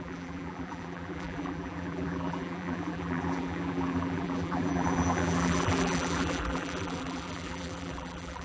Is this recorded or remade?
remade